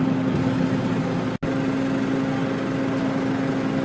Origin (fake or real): real